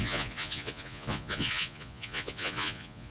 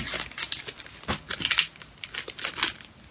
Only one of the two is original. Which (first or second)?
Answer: second